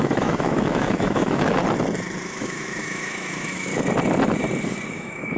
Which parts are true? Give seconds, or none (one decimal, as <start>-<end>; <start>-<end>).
1.6-2.2; 3.7-4.9